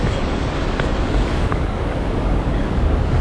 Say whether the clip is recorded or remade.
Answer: remade